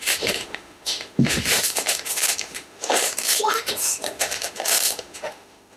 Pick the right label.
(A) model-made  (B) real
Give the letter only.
A